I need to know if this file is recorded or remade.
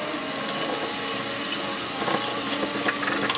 recorded